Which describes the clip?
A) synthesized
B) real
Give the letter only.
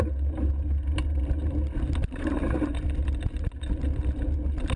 B